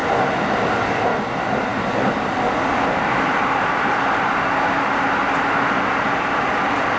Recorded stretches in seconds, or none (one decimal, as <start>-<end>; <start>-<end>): 0.0-7.0